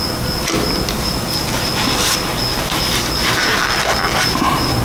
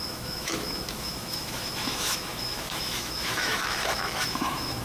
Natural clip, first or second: first